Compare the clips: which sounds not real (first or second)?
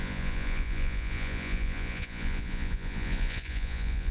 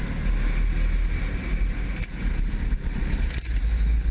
first